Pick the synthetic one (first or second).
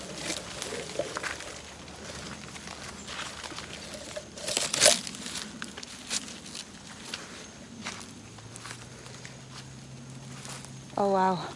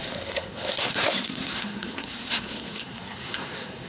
second